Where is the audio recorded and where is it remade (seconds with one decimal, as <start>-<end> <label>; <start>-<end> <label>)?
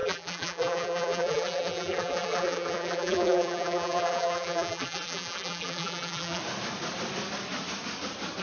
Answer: 0.0-6.4 remade; 6.4-8.4 recorded